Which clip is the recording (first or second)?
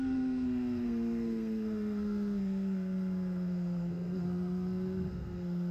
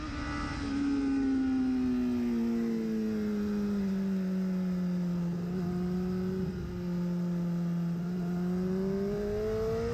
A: second